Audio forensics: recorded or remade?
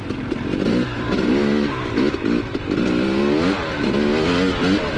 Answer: recorded